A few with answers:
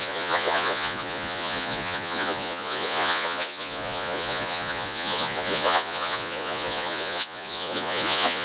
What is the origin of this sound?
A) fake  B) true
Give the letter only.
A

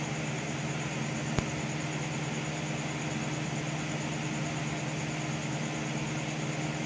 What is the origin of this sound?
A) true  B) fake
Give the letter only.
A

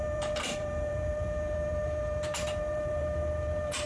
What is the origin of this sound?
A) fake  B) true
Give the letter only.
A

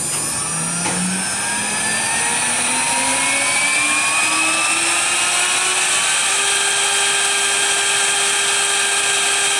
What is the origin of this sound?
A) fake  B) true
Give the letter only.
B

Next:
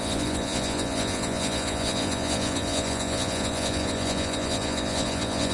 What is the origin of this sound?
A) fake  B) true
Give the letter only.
A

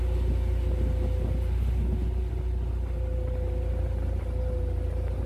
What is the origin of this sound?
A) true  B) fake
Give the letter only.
A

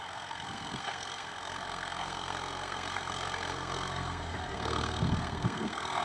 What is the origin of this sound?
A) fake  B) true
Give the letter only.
A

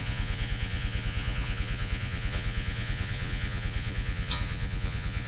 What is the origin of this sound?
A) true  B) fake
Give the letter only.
B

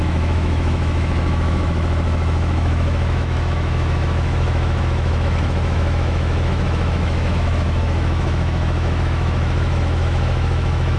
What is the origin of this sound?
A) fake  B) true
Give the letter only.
A